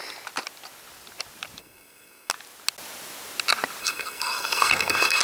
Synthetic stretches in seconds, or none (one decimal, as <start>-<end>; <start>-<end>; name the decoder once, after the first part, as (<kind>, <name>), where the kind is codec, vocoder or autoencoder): 1.6-2.3 (codec, SNAC); 3.8-5.2